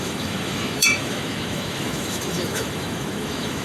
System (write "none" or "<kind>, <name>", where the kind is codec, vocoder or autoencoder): autoencoder, DAC-VAE